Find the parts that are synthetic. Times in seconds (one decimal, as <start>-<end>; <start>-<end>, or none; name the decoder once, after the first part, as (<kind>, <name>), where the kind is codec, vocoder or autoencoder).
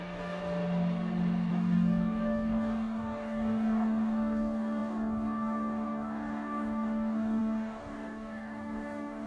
0.0-0.4 (codec, DAC); 1.5-9.3